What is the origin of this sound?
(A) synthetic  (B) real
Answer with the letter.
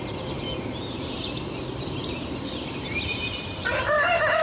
B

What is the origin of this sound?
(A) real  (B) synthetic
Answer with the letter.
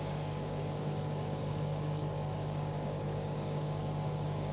B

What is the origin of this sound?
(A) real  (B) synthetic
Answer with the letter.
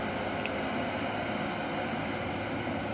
A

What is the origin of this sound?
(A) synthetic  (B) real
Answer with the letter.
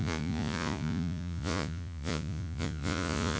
A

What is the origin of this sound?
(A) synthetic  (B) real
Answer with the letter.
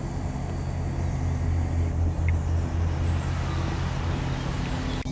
B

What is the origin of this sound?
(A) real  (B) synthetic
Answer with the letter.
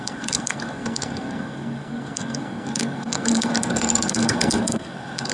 B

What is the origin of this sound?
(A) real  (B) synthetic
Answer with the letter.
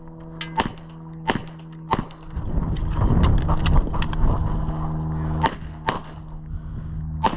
A